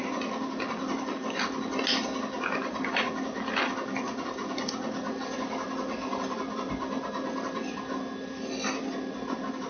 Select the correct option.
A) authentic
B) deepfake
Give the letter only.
A